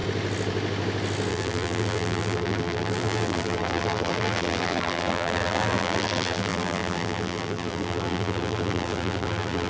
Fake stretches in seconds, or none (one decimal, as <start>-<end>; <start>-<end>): 1.3-9.7